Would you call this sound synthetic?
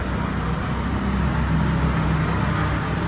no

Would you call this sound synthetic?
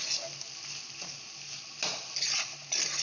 no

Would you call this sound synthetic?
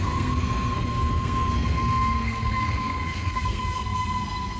yes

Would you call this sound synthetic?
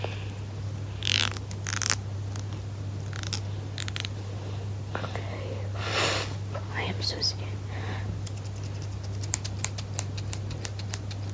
no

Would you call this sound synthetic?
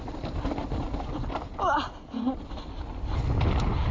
no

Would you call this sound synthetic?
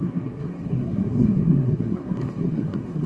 yes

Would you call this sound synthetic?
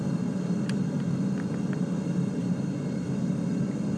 no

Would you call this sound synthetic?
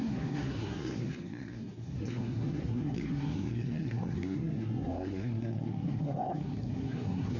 yes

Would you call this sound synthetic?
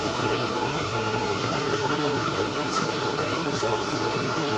yes